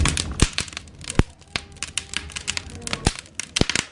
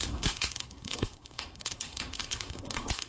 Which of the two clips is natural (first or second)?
first